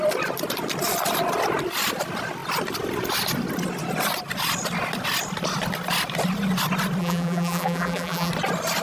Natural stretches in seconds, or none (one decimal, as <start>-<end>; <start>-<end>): 0.0-7.0; 8.3-8.8